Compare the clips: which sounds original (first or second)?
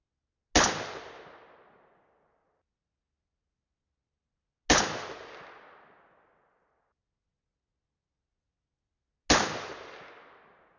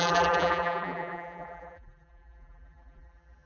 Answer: first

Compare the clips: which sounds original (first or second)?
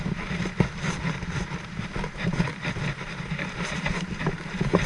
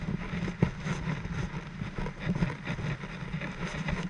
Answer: second